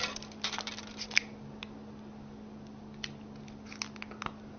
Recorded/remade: recorded